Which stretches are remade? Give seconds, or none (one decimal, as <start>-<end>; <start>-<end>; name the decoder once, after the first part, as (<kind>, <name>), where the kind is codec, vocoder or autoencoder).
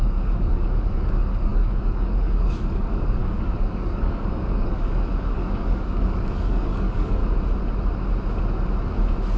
0.0-7.2 (codec, DAC)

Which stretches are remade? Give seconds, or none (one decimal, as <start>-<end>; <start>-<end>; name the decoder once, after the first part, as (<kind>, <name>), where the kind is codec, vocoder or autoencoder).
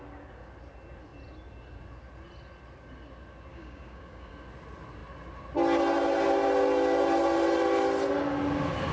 3.5-4.3 (codec, DAC)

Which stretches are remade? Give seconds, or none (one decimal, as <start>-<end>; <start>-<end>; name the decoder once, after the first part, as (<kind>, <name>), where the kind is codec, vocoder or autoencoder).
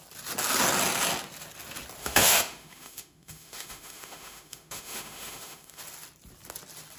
2.0-5.8 (autoencoder, DAC-VAE)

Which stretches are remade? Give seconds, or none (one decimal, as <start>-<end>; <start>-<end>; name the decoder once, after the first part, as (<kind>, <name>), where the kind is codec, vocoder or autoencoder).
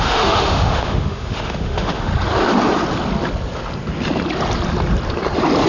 0.0-2.1 (autoencoder, DAC-VAE)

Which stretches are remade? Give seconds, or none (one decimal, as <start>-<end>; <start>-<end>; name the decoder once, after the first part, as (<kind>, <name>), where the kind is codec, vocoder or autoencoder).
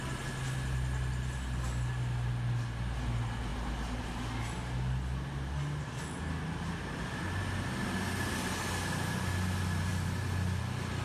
none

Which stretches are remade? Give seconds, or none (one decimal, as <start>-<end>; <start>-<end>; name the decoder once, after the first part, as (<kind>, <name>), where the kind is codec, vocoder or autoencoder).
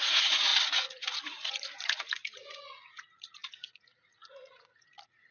0.0-5.3 (vocoder, Vocos)